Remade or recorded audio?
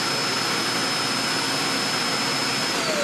recorded